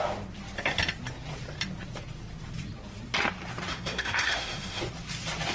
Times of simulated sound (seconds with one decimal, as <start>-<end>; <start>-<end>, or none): 3.7-4.8